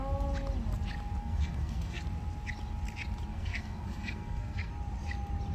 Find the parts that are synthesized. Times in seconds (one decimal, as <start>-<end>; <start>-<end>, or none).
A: 1.2-2.0; 3.3-4.7